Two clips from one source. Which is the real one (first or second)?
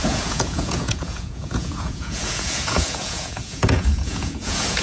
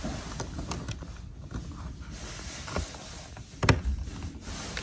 second